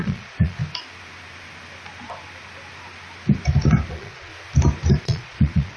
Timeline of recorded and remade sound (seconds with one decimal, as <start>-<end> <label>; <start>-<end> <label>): 0.0-0.6 remade; 0.6-3.9 recorded; 3.9-4.3 remade; 4.3-5.0 recorded; 5.0-5.8 remade